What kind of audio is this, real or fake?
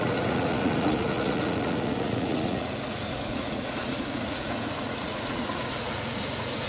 fake